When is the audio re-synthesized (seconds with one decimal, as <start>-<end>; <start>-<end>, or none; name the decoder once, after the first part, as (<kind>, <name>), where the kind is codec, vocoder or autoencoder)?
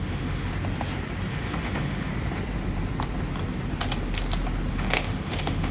0.0-0.5 (autoencoder, DAC-VAE); 1.3-2.1; 4.7-5.7